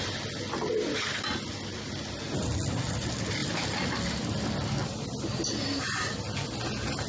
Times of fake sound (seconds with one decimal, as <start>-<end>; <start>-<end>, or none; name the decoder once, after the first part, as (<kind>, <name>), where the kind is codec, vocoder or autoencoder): 3.4-4.0 (vocoder, BigVGAN v2); 4.8-5.4